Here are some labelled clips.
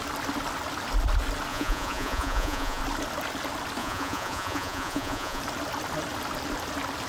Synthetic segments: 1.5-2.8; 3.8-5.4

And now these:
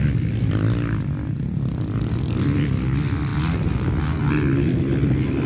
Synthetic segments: none